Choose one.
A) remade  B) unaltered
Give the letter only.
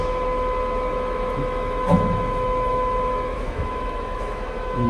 A